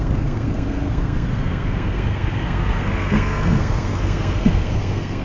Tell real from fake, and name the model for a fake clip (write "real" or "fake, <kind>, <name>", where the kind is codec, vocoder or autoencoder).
fake, codec, SNAC